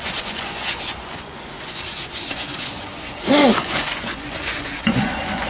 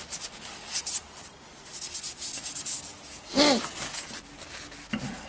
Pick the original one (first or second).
second